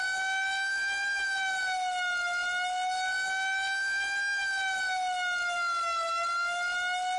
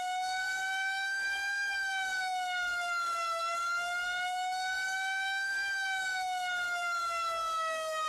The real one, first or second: first